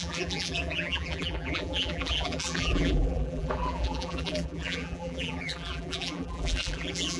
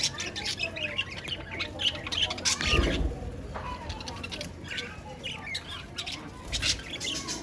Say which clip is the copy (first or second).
first